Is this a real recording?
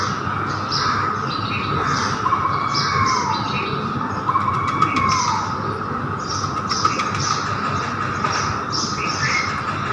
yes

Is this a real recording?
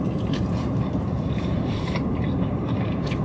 no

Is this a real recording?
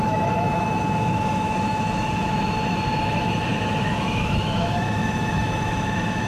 no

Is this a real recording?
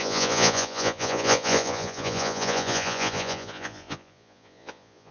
no